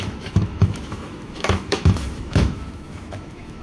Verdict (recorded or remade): remade